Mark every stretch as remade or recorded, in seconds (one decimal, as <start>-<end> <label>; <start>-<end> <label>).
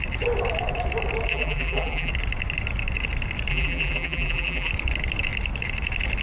0.0-1.3 recorded; 1.3-2.1 remade; 2.1-3.5 recorded; 3.5-4.7 remade; 4.7-6.2 recorded